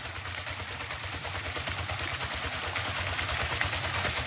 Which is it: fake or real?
real